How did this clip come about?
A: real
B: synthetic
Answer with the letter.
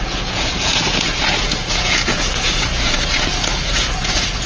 B